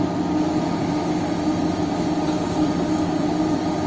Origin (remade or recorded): recorded